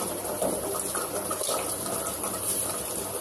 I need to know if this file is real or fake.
real